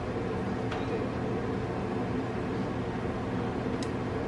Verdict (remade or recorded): recorded